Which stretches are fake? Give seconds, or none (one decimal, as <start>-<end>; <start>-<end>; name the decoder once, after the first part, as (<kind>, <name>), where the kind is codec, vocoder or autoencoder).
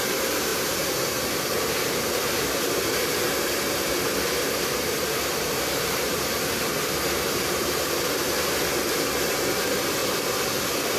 0.0-10.0 (vocoder, BigVGAN v2); 10.6-11.0